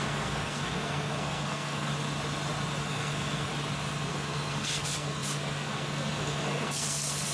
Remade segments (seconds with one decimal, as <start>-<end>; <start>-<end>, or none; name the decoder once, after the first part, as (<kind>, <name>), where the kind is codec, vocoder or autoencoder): 0.0-1.9 (codec, SNAC); 2.8-3.5; 4.1-7.3